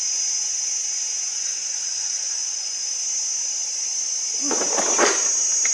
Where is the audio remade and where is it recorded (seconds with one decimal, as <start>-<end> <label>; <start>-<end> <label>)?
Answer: 0.0-1.3 recorded; 1.3-2.8 remade; 2.8-5.7 recorded